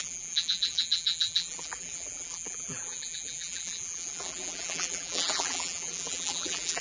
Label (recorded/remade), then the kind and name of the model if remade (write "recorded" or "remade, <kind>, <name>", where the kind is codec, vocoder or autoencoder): remade, vocoder, BigVGAN v2